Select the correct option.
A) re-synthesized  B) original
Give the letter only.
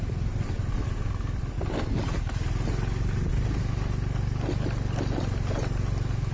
B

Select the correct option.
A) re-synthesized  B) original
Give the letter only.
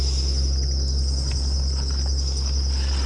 B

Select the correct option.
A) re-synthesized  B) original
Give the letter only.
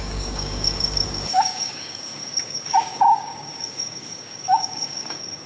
A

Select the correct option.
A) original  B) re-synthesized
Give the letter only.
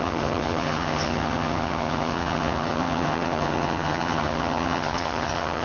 B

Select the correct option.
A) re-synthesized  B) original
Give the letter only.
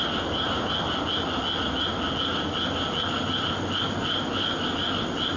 B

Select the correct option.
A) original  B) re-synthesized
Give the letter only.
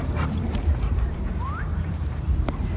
B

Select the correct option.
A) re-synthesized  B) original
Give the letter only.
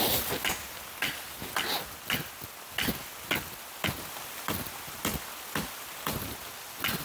B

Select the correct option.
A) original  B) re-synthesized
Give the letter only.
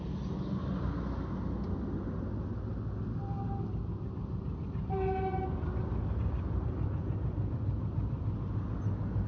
A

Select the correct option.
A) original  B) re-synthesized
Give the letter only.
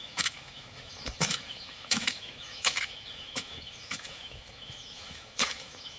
B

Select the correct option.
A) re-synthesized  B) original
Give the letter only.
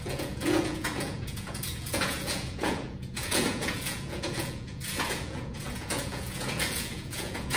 A